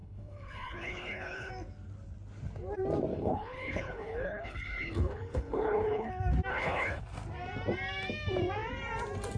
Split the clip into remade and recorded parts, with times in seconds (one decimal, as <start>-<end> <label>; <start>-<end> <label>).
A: 0.0-1.5 remade; 1.5-3.1 recorded; 3.1-6.1 remade; 6.1-6.5 recorded; 6.5-7.0 remade; 7.0-9.4 recorded